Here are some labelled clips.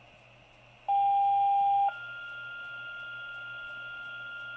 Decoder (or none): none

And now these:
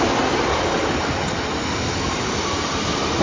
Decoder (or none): none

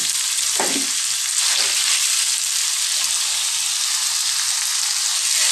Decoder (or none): none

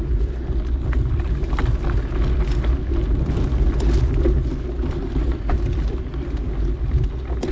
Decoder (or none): none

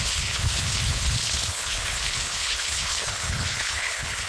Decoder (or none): codec, HILCodec